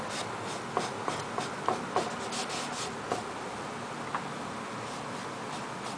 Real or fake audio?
real